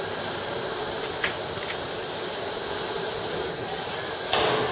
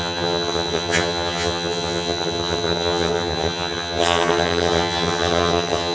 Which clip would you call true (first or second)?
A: first